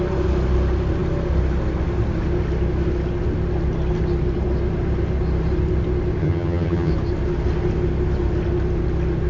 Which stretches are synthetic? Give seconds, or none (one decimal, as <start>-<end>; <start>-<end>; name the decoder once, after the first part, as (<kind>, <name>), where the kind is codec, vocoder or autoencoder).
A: 6.2-6.9 (vocoder, HiFi-GAN)